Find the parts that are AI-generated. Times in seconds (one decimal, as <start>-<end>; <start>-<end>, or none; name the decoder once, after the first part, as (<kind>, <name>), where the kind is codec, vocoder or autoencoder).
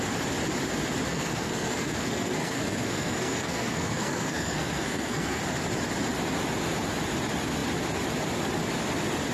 1.1-5.4 (codec, SNAC)